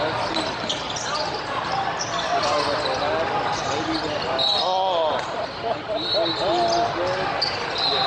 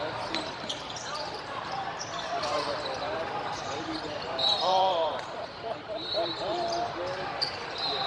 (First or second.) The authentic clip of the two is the first